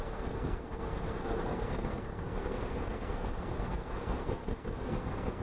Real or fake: fake